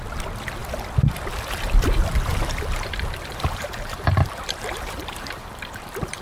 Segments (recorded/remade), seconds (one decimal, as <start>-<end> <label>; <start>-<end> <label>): 0.0-2.3 recorded; 2.3-6.2 remade